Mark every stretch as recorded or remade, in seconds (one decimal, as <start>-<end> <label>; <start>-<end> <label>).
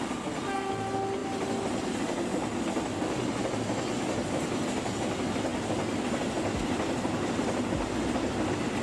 0.0-8.8 recorded